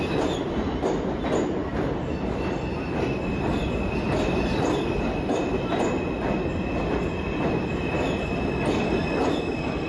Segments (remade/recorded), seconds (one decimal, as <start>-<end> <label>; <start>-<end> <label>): 0.0-9.9 recorded